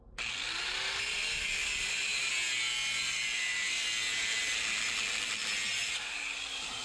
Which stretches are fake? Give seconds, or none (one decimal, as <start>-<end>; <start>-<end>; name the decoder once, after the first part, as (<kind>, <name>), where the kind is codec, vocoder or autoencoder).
none